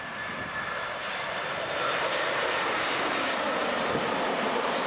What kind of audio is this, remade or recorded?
remade